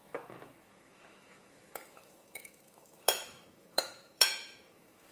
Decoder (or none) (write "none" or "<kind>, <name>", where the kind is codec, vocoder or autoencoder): autoencoder, DAC-VAE